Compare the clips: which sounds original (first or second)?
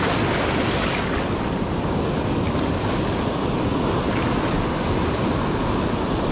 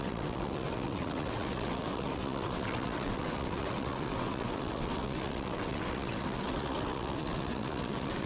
first